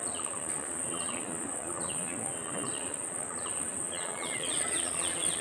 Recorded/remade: remade